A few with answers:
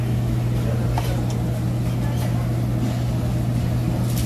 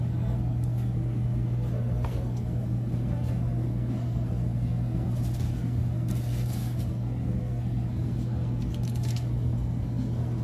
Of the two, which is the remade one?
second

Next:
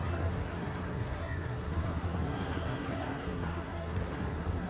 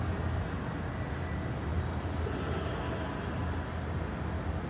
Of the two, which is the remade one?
first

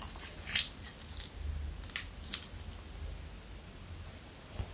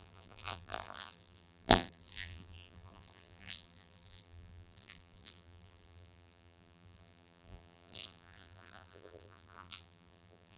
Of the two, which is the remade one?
second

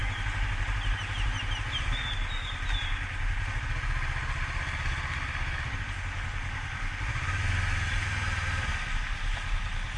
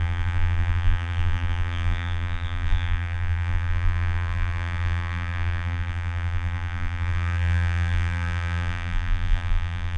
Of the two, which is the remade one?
second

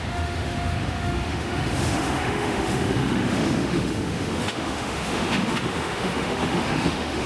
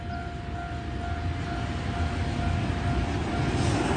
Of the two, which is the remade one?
first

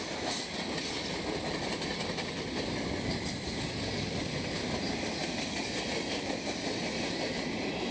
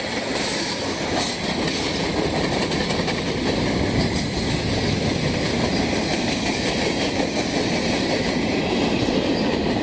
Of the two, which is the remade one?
second